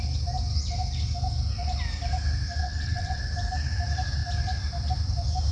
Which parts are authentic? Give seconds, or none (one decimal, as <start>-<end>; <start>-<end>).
0.0-2.6; 3.2-5.5